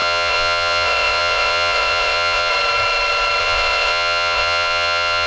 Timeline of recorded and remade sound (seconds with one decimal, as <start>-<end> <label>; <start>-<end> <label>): 0.0-2.5 remade; 2.5-3.4 recorded; 3.4-5.3 remade